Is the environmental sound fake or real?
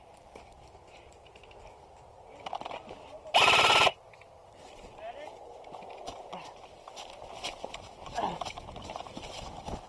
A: fake